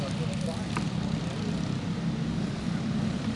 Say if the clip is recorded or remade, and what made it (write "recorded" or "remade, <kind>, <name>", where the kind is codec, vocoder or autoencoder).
recorded